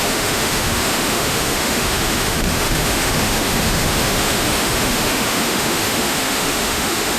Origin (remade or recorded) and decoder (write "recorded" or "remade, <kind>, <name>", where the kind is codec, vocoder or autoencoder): remade, autoencoder, DAC-VAE